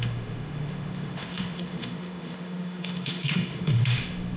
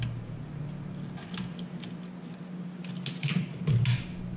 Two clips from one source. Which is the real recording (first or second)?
second